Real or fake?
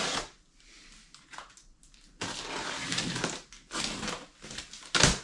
real